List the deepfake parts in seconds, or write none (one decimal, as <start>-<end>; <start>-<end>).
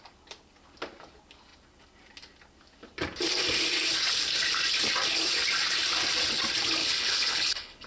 6.8-7.9